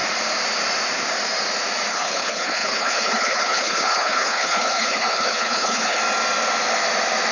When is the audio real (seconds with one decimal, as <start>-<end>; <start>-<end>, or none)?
0.0-1.9; 6.0-7.3